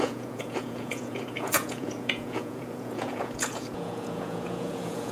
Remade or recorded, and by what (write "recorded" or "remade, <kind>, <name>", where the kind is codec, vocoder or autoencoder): remade, vocoder, Vocos